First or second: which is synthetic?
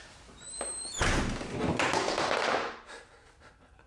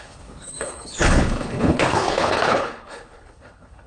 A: second